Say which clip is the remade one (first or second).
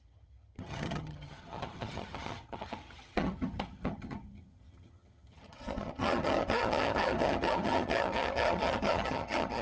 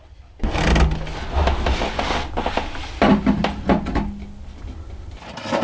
first